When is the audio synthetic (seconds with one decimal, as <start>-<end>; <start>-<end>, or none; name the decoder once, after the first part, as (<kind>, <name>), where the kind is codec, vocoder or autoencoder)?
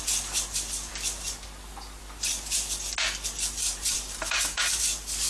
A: 3.6-4.8 (vocoder, BigVGAN v2)